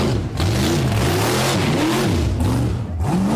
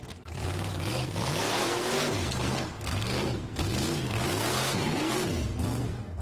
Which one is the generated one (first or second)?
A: second